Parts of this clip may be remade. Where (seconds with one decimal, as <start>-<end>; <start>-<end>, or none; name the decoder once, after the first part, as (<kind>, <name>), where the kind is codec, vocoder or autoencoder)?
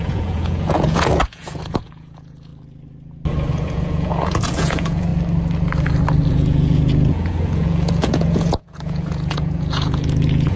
0.0-2.5 (vocoder, Vocos); 3.5-5.1; 6.3-10.6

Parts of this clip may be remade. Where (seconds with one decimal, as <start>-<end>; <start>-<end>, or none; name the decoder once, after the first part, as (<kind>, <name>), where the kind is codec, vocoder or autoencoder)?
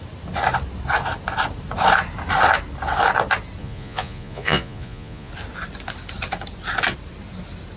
3.6-5.3 (vocoder, Vocos)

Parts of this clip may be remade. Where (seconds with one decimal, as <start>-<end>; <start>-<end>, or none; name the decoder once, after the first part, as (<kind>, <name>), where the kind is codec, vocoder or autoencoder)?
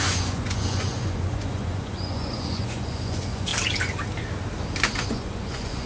0.0-3.5 (vocoder, Vocos); 4.8-5.9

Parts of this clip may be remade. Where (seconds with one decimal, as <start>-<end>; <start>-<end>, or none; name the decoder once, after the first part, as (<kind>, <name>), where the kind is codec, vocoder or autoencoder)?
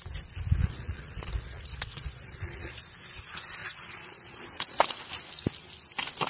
0.6-2.8 (vocoder, Vocos); 3.6-4.8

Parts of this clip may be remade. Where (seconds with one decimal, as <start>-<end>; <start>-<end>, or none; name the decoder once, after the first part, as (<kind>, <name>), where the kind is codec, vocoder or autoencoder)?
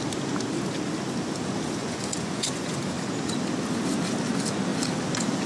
1.8-2.8 (vocoder, Vocos)